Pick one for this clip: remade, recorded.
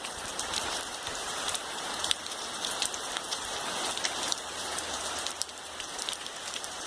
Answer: remade